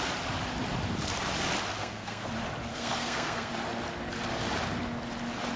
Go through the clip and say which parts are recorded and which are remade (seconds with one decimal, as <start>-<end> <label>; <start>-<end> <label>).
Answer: 0.0-1.8 recorded; 1.8-2.3 remade; 2.3-2.7 recorded; 2.7-3.5 remade; 3.5-5.6 recorded